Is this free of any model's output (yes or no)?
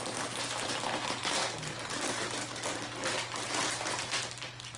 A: no